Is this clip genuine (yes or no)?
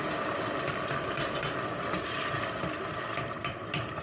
no